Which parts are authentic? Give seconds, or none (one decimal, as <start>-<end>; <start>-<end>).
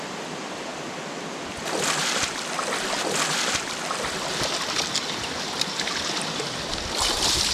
0.7-4.4